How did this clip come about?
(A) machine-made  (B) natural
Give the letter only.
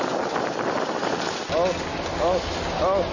B